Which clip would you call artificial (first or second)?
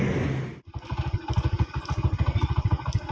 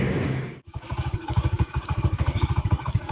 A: second